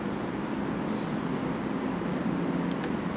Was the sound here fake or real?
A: real